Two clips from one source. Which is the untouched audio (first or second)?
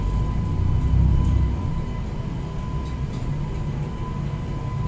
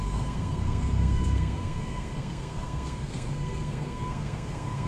first